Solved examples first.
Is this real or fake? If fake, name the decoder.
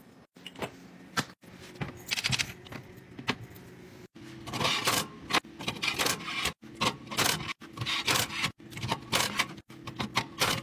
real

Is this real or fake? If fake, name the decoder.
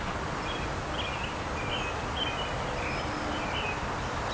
real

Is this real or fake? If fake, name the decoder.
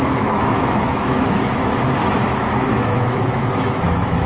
fake, autoencoder, DAC-VAE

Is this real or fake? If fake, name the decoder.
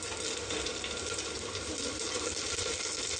real